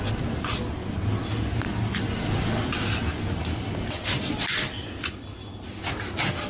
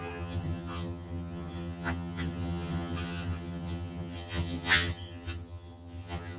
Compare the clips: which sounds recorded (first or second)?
first